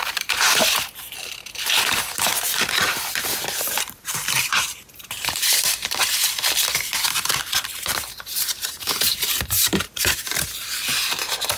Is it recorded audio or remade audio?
remade